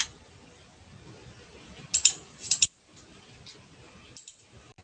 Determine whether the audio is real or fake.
real